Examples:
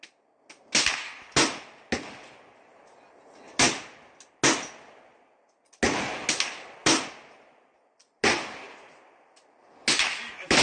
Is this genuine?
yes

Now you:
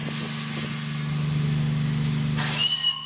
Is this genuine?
yes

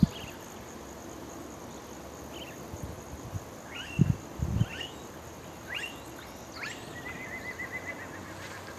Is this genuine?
yes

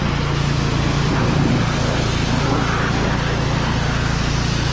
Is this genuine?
yes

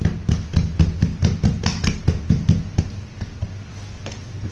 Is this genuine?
yes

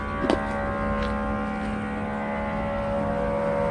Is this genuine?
yes